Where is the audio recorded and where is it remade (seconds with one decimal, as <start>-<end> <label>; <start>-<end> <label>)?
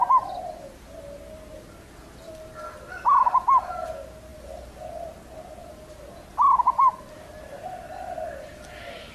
0.0-9.1 recorded